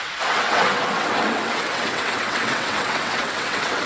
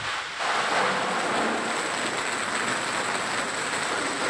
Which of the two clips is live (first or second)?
second